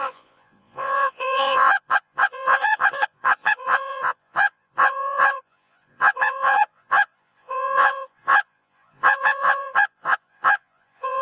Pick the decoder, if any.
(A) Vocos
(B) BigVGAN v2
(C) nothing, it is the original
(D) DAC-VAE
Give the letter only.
A